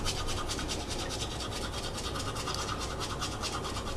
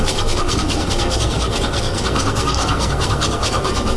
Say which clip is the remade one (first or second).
second